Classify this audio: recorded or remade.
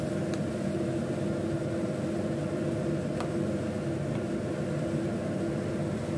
recorded